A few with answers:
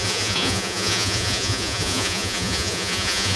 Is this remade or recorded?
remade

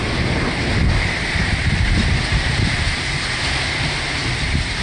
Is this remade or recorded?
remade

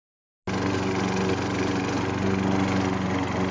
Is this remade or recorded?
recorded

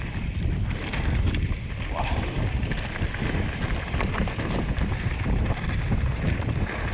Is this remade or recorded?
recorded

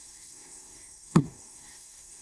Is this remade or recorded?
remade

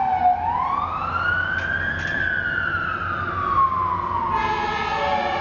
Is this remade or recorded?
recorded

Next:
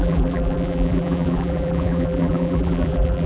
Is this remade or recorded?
remade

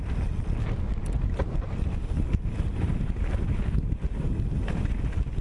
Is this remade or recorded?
recorded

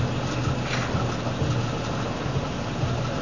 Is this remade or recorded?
recorded